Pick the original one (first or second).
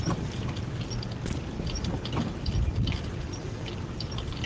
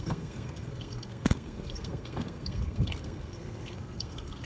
first